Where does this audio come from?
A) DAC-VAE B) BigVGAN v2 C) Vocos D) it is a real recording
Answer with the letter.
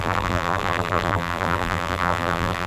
B